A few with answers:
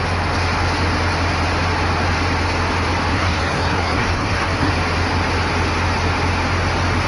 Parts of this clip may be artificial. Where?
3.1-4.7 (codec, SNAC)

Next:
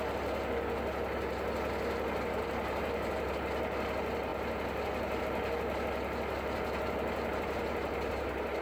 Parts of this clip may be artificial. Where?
none

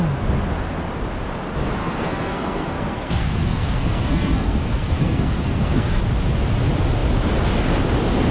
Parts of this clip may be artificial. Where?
1.8-6.0 (codec, SNAC)

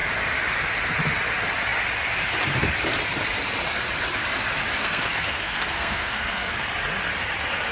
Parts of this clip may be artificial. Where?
4.8-6.7 (codec, SNAC)

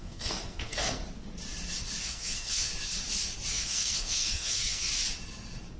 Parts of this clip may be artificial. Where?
0.0-1.0 (codec, SNAC); 2.0-2.7; 3.5-4.9

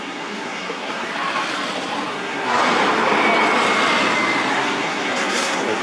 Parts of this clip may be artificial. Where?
0.0-1.1 (codec, SNAC); 2.1-2.6; 4.5-5.8

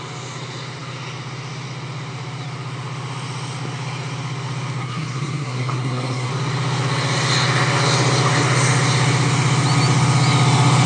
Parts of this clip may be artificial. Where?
4.8-6.3 (codec, SNAC)

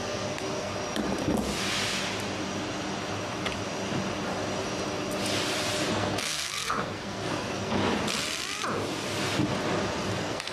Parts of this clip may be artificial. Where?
0.0-0.7 (codec, SNAC); 5.9-7.8; 10.1-10.5